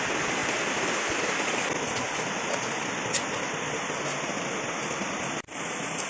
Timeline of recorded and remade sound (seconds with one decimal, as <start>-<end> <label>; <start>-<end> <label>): 0.0-6.1 recorded